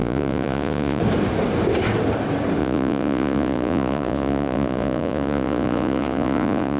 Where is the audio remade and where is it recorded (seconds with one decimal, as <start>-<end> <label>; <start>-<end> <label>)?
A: 0.0-1.0 remade; 1.0-2.6 recorded; 2.6-6.8 remade